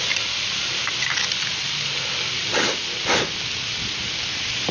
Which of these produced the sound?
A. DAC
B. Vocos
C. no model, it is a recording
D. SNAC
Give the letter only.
C